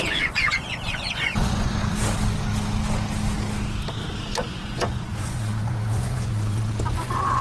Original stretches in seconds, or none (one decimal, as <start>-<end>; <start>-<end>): 1.8-4.3